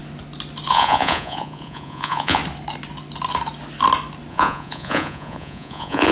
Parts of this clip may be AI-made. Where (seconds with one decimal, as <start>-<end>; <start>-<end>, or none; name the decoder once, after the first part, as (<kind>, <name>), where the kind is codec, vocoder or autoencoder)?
0.7-2.4 (vocoder, Vocos); 4.3-6.1